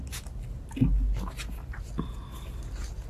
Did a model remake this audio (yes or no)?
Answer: no